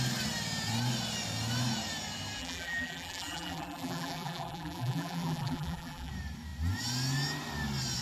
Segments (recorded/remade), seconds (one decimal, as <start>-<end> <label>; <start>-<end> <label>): 0.0-2.4 recorded; 2.4-6.1 remade; 6.1-8.0 recorded